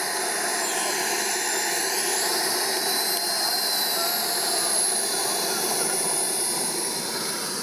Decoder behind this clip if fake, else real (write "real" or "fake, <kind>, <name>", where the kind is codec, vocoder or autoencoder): fake, vocoder, BigVGAN v2